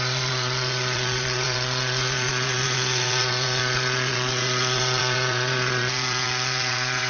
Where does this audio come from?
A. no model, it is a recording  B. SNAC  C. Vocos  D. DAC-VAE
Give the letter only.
C